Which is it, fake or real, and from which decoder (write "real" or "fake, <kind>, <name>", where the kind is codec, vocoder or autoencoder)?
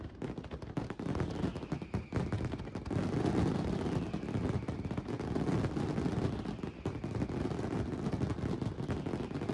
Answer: real